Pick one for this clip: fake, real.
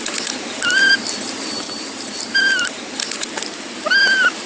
real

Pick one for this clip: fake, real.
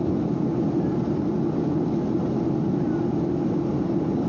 real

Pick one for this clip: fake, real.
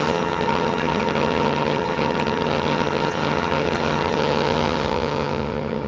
fake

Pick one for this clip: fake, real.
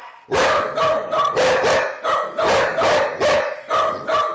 real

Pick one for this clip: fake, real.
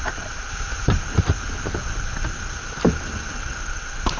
real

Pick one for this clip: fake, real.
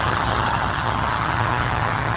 fake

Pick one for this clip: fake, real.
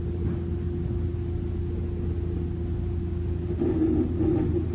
real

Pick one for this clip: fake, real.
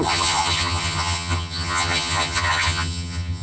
fake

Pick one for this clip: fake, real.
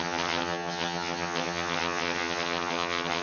fake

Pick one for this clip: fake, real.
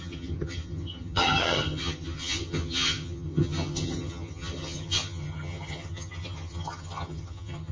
fake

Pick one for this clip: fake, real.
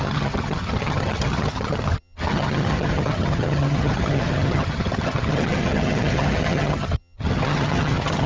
fake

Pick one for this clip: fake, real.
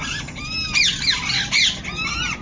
real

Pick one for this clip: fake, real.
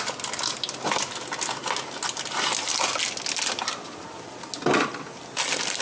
real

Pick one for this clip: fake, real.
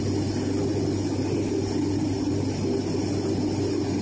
real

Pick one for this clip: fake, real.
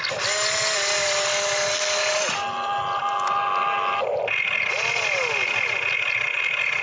real